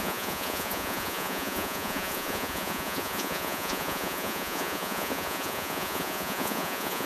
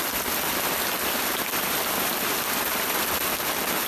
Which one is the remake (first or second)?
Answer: first